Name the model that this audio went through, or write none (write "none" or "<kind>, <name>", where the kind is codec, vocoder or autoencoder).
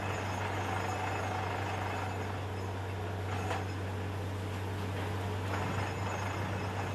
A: none